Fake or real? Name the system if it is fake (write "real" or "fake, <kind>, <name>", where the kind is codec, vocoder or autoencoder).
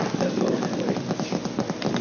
real